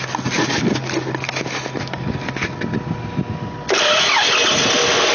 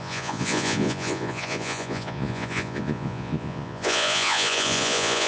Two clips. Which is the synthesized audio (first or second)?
second